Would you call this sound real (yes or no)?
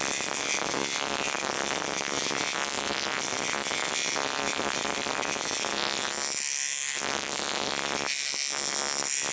yes